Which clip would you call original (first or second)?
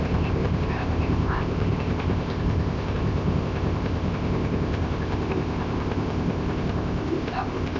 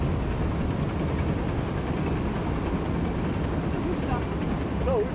second